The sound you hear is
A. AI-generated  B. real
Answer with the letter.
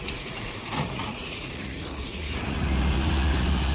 A